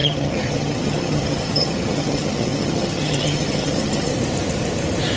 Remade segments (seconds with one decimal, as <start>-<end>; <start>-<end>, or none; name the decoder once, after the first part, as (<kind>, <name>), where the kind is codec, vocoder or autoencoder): 0.0-4.1 (vocoder, HiFi-GAN)